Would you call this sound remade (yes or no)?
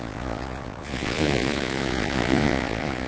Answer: yes